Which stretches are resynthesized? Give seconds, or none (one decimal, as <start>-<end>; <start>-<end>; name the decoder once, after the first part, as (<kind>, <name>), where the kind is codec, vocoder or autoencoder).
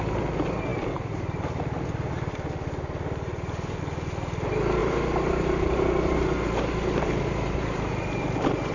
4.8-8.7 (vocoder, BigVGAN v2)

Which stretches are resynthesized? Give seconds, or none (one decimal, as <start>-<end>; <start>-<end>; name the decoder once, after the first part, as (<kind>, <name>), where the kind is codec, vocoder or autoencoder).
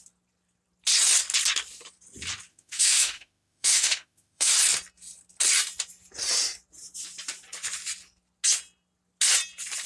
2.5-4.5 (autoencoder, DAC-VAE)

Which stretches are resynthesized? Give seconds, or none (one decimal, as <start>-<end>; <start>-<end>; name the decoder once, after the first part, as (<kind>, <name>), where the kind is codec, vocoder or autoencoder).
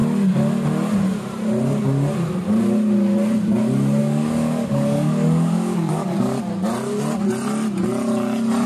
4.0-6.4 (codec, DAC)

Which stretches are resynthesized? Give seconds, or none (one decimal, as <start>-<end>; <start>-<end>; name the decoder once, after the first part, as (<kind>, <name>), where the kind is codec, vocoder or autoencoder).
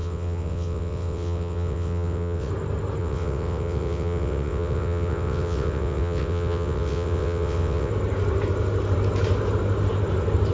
0.0-2.5 (vocoder, WaveNeXt); 3.0-7.9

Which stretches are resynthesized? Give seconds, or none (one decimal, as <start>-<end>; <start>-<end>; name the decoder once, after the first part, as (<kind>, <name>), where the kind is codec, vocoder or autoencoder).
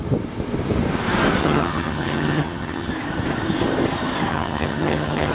1.4-2.9 (vocoder, HiFi-GAN); 4.3-5.3